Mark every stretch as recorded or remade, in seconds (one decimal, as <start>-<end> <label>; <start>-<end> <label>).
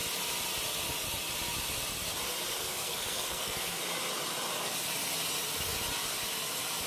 0.0-2.6 recorded; 2.6-3.8 remade; 3.8-6.9 recorded